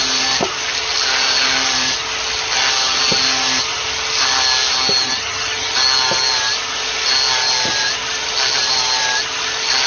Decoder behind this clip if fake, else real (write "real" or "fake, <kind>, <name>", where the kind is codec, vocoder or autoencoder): real